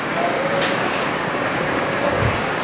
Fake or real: fake